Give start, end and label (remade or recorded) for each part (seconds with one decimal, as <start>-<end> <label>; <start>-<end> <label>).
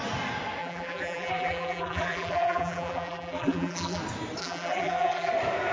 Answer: 0.0-0.6 recorded; 0.6-4.0 remade; 4.0-4.4 recorded; 4.4-5.3 remade; 5.3-5.7 recorded